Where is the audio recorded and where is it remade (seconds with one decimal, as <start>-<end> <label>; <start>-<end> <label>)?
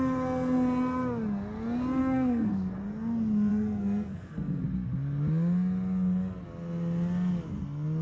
0.0-2.0 recorded; 2.0-2.8 remade; 2.8-3.5 recorded; 3.5-4.6 remade; 4.6-8.0 recorded